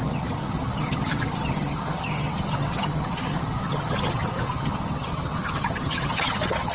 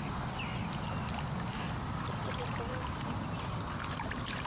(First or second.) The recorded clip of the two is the second